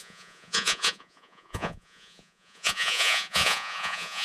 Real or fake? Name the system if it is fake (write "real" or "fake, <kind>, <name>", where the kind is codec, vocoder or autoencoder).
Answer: fake, vocoder, Vocos